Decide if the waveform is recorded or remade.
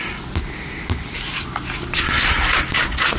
recorded